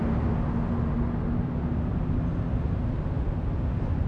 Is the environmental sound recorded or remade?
recorded